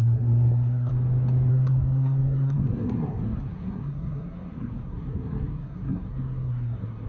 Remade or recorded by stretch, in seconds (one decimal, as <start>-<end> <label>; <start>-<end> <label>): 0.0-0.9 remade; 0.9-1.5 recorded; 1.5-7.1 remade